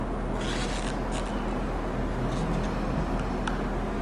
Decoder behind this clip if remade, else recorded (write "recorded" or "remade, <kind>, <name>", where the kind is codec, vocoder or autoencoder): recorded